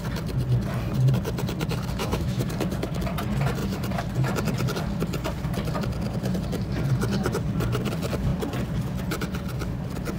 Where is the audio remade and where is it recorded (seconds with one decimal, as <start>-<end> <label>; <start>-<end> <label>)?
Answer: 0.0-2.0 recorded; 2.0-2.5 remade; 2.5-10.2 recorded

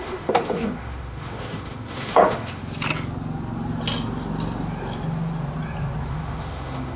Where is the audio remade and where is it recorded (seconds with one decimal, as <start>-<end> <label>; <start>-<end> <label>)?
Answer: 0.0-2.6 remade; 2.6-6.1 recorded; 6.1-7.0 remade

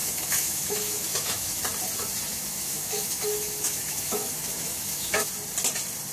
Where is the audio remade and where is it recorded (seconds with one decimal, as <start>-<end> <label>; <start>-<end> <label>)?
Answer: 0.0-1.6 remade; 1.6-2.3 recorded; 2.3-5.3 remade; 5.3-6.1 recorded

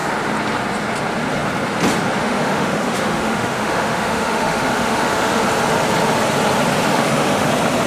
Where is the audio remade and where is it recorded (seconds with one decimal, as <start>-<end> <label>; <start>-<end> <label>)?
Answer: 0.0-2.2 recorded; 2.2-5.4 remade; 5.4-6.9 recorded; 6.9-7.5 remade; 7.5-7.9 recorded

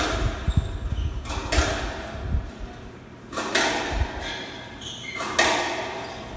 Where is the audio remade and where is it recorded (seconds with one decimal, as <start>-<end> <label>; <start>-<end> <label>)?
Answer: 0.0-6.4 recorded